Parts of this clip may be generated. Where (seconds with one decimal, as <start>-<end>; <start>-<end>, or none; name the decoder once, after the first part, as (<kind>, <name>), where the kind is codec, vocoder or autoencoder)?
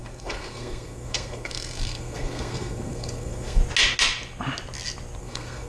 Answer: 0.0-3.6 (codec, SNAC); 5.2-5.7